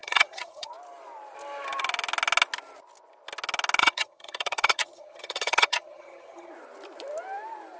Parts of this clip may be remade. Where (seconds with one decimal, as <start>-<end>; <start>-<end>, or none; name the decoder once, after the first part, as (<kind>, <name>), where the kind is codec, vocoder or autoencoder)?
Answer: 0.0-0.7 (vocoder, HiFi-GAN); 3.8-6.5